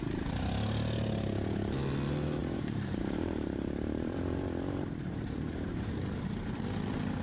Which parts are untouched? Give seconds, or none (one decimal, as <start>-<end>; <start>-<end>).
0.0-2.4; 5.9-7.2